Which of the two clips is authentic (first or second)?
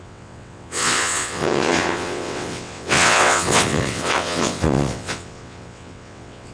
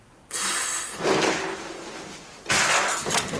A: second